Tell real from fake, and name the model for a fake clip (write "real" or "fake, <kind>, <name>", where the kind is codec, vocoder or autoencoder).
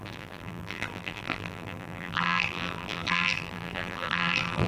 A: fake, vocoder, BigVGAN v2